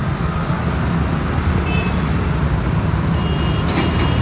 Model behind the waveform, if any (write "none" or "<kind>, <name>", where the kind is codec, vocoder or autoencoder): none